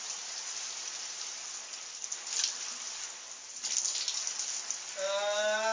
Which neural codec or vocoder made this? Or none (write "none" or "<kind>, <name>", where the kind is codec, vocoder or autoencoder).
none